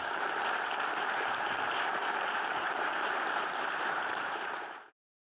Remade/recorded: remade